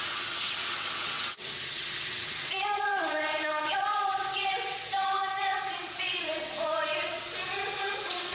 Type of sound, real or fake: fake